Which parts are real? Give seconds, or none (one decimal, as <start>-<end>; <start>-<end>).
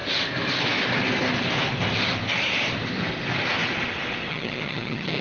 0.0-4.3